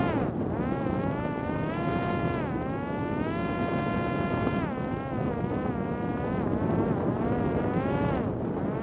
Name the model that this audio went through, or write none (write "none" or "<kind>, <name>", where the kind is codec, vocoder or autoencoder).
none